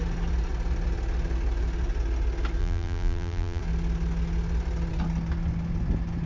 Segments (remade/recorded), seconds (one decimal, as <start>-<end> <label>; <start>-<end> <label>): 0.0-2.6 recorded; 2.6-3.6 remade; 3.6-6.3 recorded